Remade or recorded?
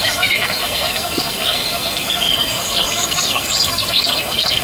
remade